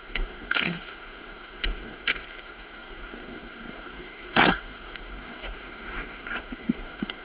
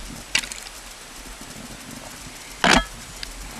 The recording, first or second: second